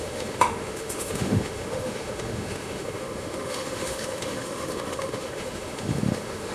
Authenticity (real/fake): fake